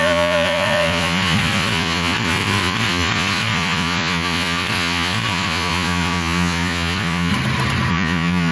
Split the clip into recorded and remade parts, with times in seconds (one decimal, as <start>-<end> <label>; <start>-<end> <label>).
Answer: 0.0-7.3 remade; 7.3-7.9 recorded; 7.9-8.5 remade